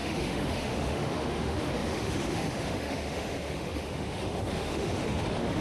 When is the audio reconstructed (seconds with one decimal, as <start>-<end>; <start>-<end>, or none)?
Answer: 0.0-5.6